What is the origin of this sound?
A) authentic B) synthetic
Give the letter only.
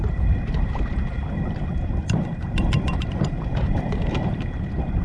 B